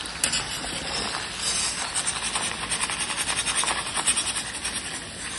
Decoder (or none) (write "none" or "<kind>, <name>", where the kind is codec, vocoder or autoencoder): none